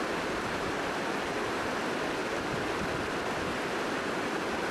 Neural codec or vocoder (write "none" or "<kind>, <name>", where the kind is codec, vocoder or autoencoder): vocoder, BigVGAN v2